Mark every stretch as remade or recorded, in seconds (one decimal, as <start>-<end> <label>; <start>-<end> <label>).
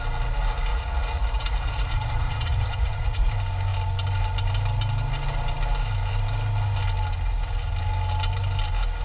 0.0-0.7 recorded; 0.7-3.3 remade; 3.3-9.0 recorded